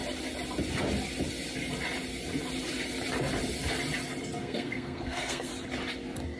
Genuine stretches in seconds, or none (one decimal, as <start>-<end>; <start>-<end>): 0.0-4.4; 5.5-6.4